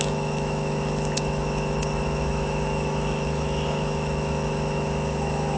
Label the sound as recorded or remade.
remade